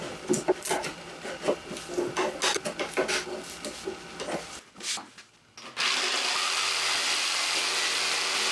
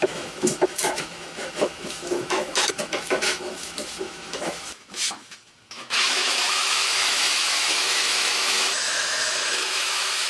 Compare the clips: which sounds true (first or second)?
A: first